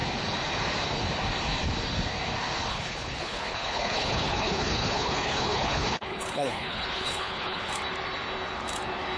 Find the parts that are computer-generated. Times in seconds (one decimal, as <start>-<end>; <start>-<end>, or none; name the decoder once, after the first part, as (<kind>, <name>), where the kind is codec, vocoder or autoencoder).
2.7-7.7 (codec, HILCodec)

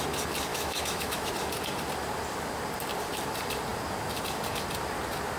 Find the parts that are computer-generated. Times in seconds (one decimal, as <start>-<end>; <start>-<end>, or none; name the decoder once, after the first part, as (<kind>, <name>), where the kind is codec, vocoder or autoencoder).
0.5-1.3 (autoencoder, DAC-VAE)

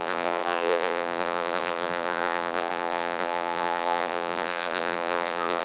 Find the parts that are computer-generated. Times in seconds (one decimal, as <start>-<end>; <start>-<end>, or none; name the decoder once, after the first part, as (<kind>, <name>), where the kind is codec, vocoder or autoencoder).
0.0-5.6 (vocoder, BigVGAN v2)

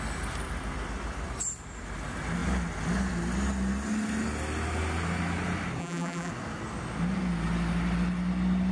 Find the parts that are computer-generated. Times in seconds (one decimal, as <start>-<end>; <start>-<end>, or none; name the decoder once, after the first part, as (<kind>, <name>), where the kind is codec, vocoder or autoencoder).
5.8-6.3 (vocoder, BigVGAN v2)

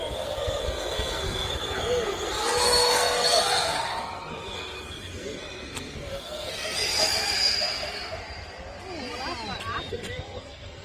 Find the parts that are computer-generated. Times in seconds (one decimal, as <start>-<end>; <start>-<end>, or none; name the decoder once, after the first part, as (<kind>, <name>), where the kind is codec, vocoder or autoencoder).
0.0-8.2 (codec, SNAC); 9.9-10.8